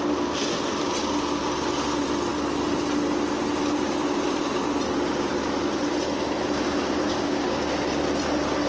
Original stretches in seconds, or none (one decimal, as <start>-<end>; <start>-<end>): 0.0-7.0; 7.7-8.7